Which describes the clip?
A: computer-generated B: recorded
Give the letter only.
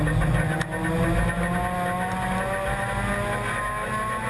B